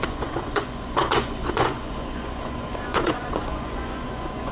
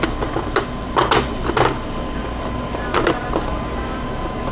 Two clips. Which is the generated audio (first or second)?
first